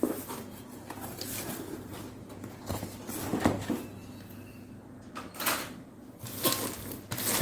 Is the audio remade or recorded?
recorded